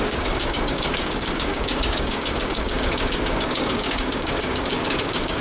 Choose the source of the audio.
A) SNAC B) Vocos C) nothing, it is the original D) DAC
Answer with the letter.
D